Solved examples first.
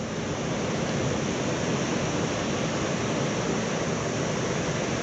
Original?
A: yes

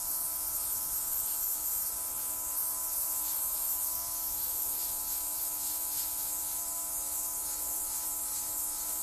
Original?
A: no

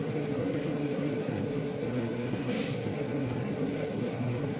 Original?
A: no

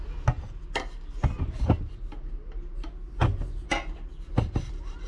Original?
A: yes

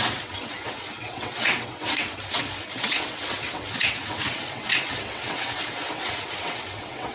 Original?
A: no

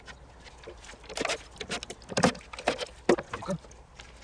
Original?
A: yes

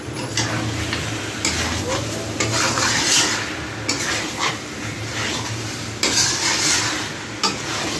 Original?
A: yes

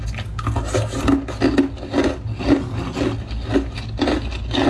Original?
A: yes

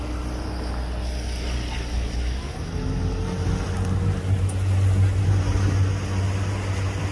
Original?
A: yes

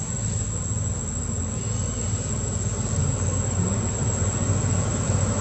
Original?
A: yes